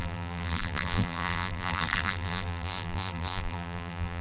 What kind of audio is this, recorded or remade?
remade